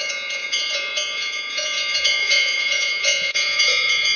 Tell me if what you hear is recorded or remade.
remade